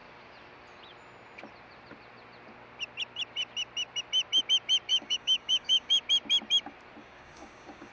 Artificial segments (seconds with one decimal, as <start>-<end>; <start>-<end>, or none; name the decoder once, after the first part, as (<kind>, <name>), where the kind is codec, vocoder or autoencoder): 4.9-6.0 (codec, DAC); 7.0-7.9